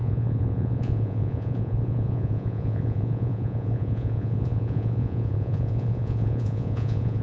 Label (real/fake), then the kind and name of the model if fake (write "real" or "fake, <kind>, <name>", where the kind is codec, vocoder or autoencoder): fake, vocoder, Vocos